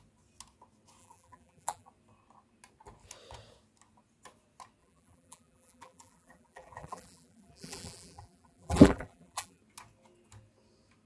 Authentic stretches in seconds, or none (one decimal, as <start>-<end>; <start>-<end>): 0.0-1.0; 1.9-4.8; 9.6-11.1